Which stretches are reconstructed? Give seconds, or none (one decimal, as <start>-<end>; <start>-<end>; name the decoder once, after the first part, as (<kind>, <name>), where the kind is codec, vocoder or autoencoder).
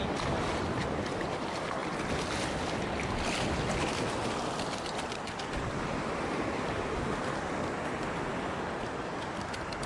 none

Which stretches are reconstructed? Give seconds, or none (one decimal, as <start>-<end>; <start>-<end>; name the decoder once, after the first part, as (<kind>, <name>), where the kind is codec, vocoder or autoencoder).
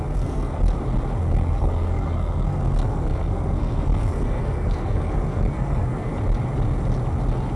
0.0-0.7 (codec, SNAC); 1.2-6.1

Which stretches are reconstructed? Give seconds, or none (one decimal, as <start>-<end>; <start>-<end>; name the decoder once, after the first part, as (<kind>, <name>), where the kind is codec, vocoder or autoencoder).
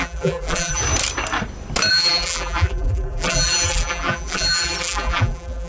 0.0-0.8 (vocoder, BigVGAN v2); 1.9-5.7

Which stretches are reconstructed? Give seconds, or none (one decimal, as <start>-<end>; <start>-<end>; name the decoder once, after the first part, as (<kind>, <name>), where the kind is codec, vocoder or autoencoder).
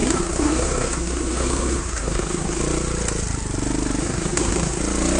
0.0-2.6 (codec, SNAC); 4.0-4.8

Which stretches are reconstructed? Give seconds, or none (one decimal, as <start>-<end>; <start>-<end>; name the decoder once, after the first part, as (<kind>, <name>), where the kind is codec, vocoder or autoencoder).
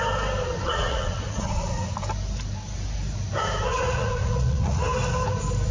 0.4-1.9 (vocoder, Vocos); 3.7-4.8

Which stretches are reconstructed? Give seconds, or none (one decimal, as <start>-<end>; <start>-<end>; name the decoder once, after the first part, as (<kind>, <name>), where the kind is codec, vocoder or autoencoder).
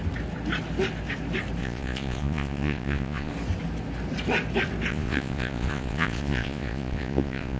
1.6-3.3 (vocoder, Vocos); 4.9-7.6